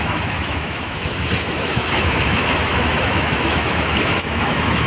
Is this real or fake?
fake